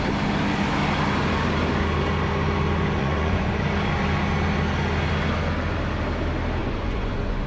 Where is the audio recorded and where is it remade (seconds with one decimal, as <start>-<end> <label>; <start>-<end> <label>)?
0.0-3.0 recorded; 3.0-3.5 remade; 3.5-6.6 recorded; 6.6-7.5 remade